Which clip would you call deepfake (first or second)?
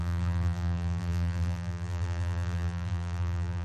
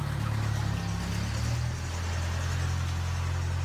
first